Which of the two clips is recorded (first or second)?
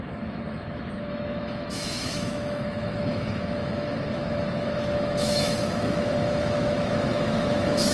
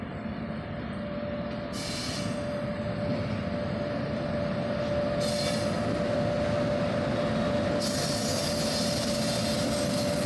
second